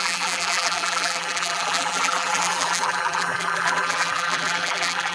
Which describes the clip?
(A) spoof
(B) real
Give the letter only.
A